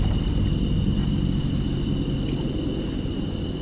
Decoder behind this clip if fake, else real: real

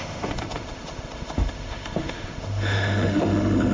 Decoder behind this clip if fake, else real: fake, autoencoder, DAC-VAE